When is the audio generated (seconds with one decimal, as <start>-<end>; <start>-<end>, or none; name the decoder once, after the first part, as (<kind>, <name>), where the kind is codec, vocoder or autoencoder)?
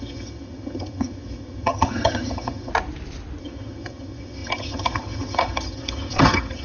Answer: 0.0-2.7 (vocoder, HiFi-GAN); 3.4-6.6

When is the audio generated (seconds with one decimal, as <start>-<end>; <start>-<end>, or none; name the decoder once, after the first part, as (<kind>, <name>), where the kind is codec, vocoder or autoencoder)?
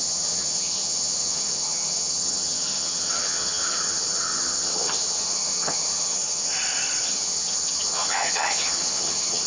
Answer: 0.0-6.5 (vocoder, HiFi-GAN); 7.0-9.5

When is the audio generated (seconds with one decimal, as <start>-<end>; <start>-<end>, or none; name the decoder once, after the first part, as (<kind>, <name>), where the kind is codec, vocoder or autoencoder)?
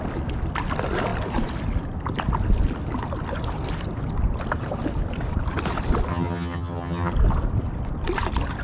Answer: 6.1-7.1 (vocoder, HiFi-GAN)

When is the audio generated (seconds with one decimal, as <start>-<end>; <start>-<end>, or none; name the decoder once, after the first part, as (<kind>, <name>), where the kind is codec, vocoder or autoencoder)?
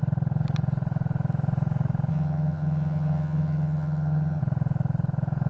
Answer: 2.1-4.4 (vocoder, HiFi-GAN)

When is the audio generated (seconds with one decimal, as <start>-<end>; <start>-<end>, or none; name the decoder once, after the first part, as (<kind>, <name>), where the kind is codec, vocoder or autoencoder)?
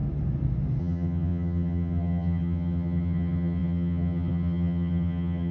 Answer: 0.8-5.5 (vocoder, HiFi-GAN)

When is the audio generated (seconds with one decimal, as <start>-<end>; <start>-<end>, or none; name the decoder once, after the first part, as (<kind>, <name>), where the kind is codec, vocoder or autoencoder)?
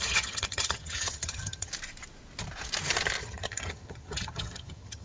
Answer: 0.0-1.7 (vocoder, HiFi-GAN); 3.2-5.0